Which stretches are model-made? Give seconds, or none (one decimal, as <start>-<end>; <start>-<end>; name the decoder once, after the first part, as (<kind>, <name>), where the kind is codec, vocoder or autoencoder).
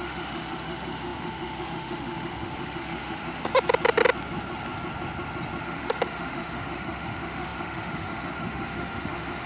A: 0.0-3.5 (autoencoder, DAC-VAE); 5.6-9.5